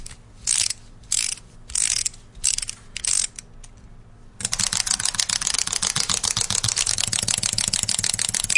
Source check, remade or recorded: recorded